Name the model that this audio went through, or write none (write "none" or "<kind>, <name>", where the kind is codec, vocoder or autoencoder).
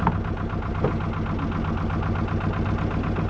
none